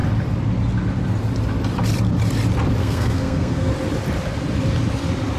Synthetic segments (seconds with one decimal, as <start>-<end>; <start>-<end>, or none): 2.8-3.7